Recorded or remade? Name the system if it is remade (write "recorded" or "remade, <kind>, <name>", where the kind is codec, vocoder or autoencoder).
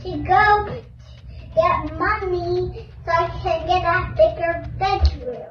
recorded